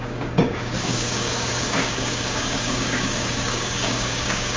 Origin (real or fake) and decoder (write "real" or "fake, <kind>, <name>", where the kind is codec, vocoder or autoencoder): fake, codec, DAC